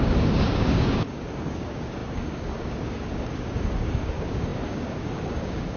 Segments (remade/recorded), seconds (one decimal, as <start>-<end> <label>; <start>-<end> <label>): 0.0-5.8 remade